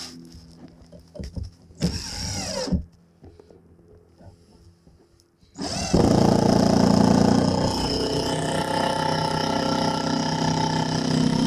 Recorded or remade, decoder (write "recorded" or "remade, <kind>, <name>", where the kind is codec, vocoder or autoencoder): recorded